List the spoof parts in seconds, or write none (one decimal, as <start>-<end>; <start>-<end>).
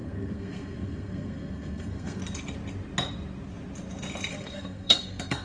0.0-2.2; 4.3-5.4